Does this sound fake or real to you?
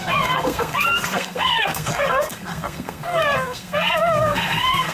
fake